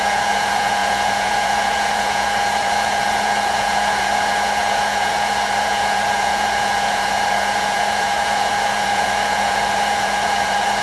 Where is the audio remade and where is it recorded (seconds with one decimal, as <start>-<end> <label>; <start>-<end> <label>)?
0.0-10.8 remade